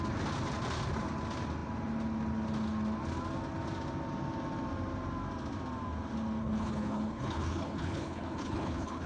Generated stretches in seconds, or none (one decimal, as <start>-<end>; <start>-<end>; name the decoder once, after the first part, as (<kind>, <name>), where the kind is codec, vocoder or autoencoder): 6.4-9.1 (codec, HILCodec)